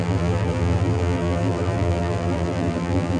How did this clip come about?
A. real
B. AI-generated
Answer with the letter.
B